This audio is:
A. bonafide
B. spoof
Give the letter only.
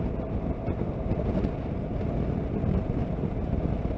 A